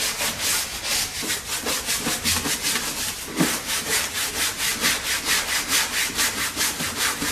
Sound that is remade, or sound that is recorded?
recorded